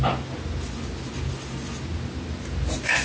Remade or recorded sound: recorded